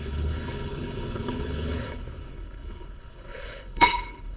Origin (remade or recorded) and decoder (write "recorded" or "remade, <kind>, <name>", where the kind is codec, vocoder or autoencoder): remade, codec, HILCodec